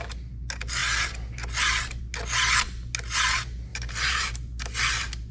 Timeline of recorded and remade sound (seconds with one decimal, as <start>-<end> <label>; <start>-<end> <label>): 0.0-3.7 recorded; 3.7-4.3 remade; 4.3-5.3 recorded